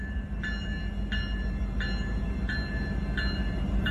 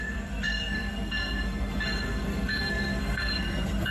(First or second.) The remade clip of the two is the second